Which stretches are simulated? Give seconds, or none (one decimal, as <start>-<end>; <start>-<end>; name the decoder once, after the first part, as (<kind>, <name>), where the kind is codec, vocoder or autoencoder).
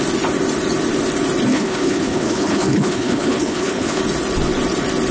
1.5-4.0 (codec, HILCodec)